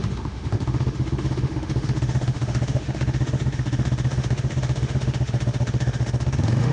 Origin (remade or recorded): remade